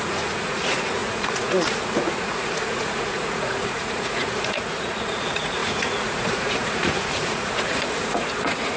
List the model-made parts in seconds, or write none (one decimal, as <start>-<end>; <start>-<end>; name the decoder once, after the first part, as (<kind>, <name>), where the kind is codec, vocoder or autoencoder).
0.0-8.8 (vocoder, Vocos)